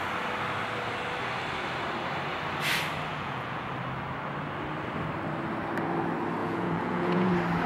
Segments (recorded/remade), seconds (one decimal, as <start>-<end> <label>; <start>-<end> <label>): 0.0-3.1 recorded; 3.1-3.7 remade; 3.7-6.4 recorded; 6.4-7.3 remade; 7.3-7.7 recorded